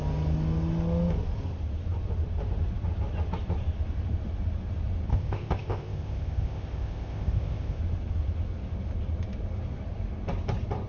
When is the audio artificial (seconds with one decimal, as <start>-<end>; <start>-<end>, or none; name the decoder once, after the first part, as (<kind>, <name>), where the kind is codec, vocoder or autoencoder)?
5.1-7.8 (codec, ZipCodec)